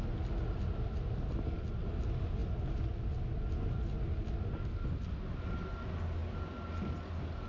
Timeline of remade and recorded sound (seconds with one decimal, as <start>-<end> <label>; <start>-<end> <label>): 0.0-7.5 recorded